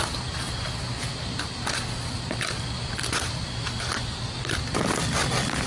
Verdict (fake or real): real